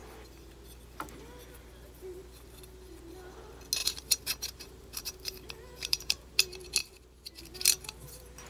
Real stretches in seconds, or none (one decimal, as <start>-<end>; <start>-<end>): 0.0-3.8; 6.3-6.8; 7.4-8.5